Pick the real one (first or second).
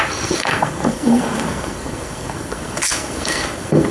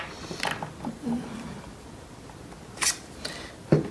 second